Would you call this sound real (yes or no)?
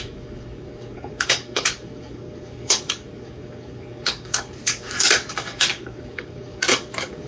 no